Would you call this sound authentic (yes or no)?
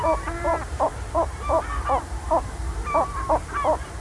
no